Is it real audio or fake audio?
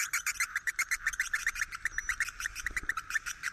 real